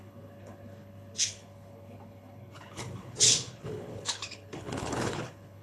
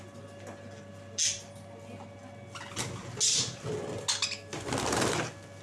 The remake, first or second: first